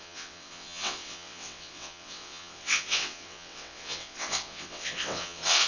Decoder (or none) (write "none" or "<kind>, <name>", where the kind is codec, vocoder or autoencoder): vocoder, WaveNeXt